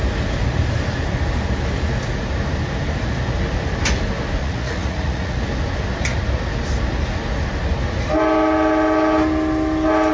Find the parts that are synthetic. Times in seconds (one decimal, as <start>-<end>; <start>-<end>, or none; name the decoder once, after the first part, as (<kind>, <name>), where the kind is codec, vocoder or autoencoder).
4.4-5.4 (vocoder, Vocos)